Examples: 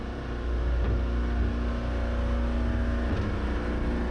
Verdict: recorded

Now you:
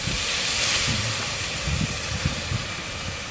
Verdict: remade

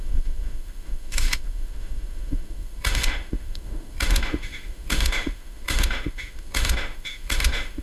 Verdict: remade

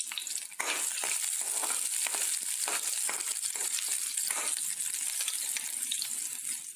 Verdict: recorded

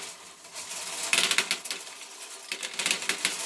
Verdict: recorded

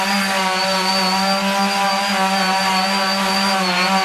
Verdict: recorded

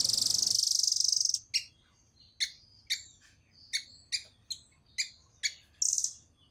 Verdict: recorded